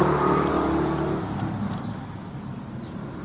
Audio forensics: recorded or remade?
remade